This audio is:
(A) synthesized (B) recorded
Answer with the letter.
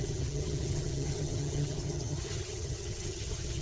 A